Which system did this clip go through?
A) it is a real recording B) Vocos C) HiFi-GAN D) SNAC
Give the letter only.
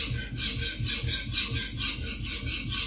A